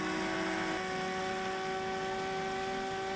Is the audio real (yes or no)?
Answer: yes